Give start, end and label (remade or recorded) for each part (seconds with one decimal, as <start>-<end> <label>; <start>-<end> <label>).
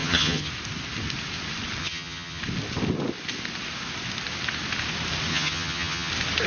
0.0-0.5 remade; 0.5-1.8 recorded; 1.8-2.4 remade; 2.4-5.3 recorded; 5.3-6.1 remade; 6.1-6.5 recorded